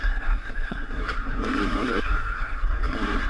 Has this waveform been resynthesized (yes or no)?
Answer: yes